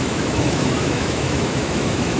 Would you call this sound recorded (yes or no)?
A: no